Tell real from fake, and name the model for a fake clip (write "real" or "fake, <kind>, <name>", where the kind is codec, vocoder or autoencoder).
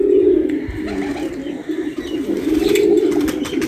real